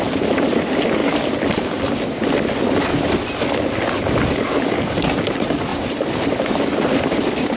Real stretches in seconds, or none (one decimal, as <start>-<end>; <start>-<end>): 0.0-7.6